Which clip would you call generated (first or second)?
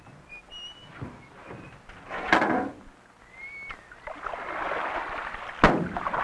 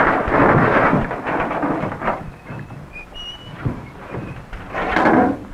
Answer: second